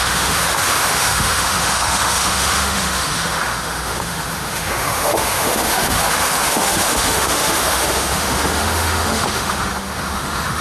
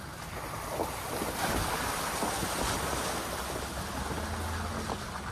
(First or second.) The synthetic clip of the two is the first